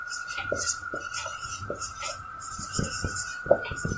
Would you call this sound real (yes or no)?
yes